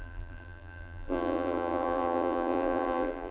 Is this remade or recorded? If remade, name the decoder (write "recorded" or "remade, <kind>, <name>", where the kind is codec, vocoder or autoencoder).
remade, vocoder, BigVGAN v2